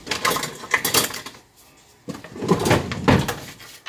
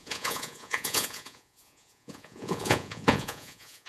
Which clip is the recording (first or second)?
first